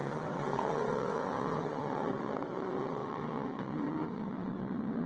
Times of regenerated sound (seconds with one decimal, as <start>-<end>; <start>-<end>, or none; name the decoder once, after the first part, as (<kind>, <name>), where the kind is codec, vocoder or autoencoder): 0.0-5.1 (vocoder, WaveNeXt)